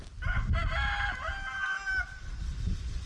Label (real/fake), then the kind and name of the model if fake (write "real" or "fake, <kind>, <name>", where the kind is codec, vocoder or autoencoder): real